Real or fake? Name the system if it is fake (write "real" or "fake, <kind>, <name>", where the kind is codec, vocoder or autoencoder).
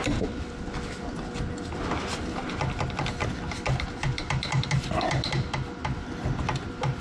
real